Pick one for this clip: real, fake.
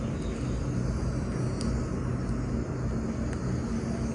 real